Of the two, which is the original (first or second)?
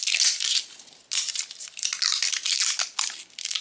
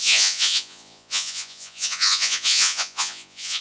first